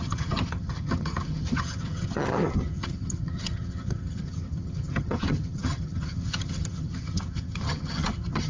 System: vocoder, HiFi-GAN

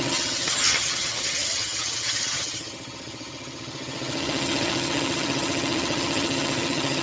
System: vocoder, HiFi-GAN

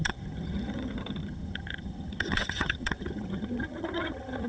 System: vocoder, HiFi-GAN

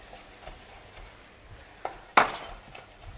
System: none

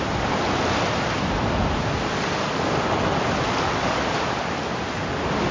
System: none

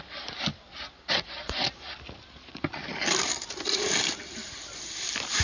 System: none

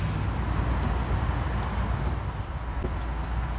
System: none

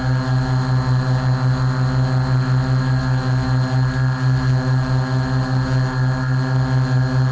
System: none